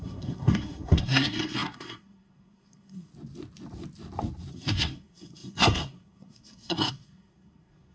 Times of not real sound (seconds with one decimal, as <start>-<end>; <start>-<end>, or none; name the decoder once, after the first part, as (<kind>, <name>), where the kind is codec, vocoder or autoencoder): 0.0-3.1 (codec, SNAC); 4.5-7.9